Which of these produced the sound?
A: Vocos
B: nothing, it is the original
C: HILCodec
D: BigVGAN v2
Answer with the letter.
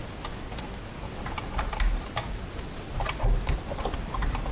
B